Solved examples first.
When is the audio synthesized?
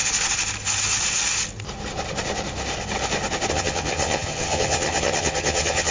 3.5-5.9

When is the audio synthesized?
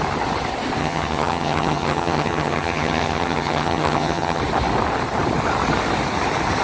0.8-4.4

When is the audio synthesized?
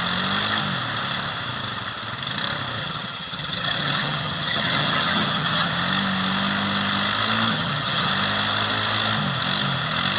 2.8-5.7; 7.5-8.1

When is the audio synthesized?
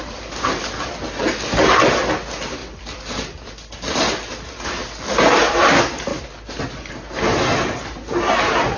none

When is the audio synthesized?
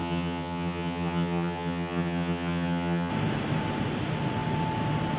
0.0-3.1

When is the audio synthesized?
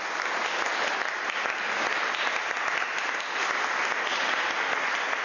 none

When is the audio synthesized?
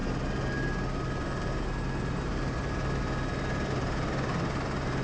none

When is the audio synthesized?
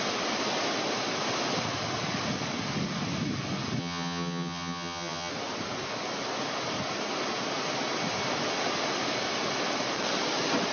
3.8-5.3